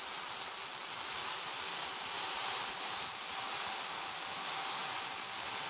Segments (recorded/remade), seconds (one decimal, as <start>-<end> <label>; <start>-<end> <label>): 0.0-5.7 recorded